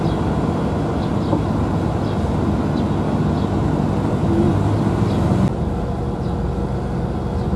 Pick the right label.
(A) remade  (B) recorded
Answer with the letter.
B